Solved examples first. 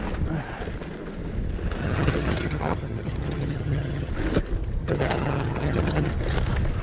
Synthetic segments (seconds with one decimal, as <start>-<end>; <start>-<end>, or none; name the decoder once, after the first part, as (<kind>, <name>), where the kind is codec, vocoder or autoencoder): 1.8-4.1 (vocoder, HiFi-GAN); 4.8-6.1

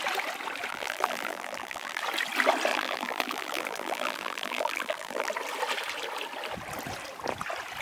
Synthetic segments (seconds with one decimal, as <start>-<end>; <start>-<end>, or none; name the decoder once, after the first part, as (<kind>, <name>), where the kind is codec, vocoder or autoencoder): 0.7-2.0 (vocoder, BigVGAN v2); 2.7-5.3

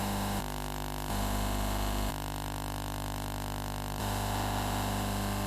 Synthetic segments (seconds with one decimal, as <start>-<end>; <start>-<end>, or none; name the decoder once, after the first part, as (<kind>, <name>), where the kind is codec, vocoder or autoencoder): 0.0-0.4 (autoencoder, DAC-VAE); 1.1-2.1; 4.0-5.5

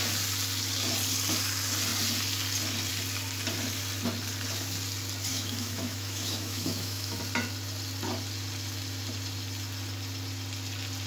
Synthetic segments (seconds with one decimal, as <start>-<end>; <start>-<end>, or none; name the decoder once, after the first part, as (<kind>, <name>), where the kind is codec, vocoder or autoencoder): 5.3-7.2 (autoencoder, DAC-VAE)

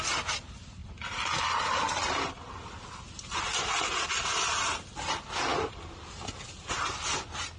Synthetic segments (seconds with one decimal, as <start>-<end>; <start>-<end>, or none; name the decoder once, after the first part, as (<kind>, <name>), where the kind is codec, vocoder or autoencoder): 0.8-2.5 (vocoder, BigVGAN v2)

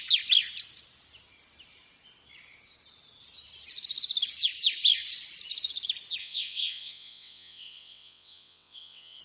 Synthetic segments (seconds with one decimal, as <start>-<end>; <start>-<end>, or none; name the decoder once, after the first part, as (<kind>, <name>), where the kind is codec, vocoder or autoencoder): 6.2-9.2 (vocoder, WaveNeXt)